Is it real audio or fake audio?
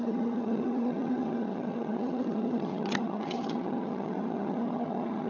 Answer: fake